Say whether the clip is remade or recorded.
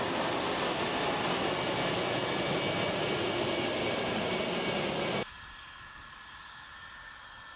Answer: recorded